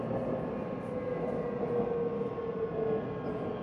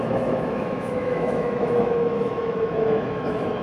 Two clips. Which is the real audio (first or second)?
first